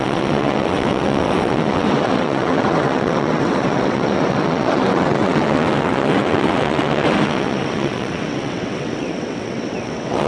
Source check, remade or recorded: remade